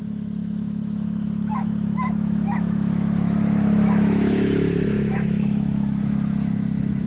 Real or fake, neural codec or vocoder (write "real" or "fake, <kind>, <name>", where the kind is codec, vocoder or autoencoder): fake, autoencoder, DAC-VAE